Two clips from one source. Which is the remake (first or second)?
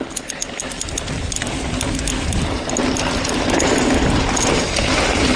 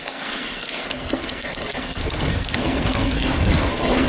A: second